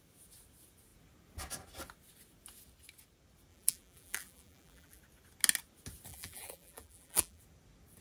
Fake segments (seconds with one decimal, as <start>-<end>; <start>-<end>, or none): 3.5-5.0; 6.1-7.4